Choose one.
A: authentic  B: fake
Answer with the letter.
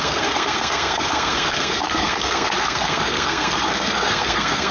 B